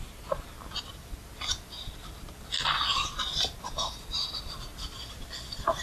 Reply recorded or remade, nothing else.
recorded